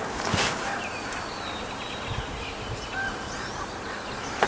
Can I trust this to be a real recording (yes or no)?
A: yes